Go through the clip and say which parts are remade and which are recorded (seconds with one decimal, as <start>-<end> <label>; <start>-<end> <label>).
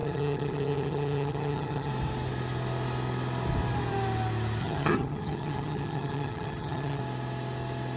0.0-1.9 remade; 1.9-4.6 recorded; 4.6-7.0 remade; 7.0-8.0 recorded